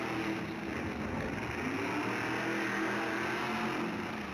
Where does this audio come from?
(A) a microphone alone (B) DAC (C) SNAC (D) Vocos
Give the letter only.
A